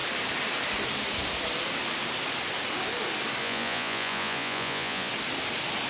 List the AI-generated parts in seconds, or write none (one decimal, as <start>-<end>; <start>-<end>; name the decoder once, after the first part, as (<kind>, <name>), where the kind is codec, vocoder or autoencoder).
3.4-5.1 (vocoder, Vocos)